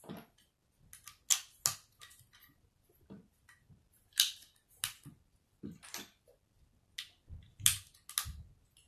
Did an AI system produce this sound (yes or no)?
no